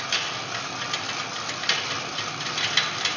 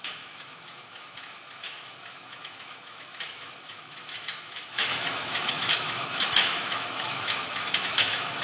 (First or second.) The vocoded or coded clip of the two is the second